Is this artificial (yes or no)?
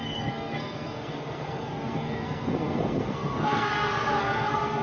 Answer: yes